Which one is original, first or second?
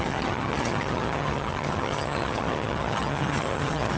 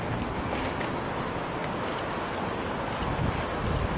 second